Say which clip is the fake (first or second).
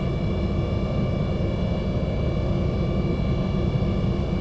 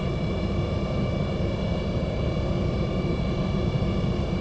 second